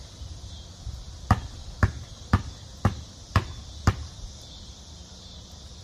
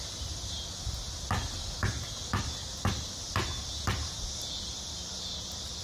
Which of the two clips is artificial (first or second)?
first